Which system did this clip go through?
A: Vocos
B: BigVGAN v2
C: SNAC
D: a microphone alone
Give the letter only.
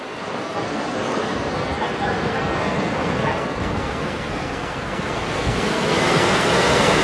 C